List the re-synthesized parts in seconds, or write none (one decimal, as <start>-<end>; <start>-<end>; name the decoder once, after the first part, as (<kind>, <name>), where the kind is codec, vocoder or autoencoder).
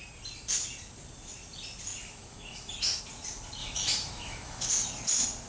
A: 1.9-3.0 (autoencoder, DAC-VAE); 3.6-4.7